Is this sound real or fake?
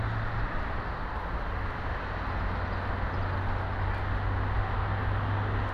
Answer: real